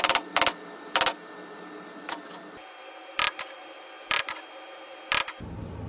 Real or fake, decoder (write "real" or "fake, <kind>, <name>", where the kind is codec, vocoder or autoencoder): real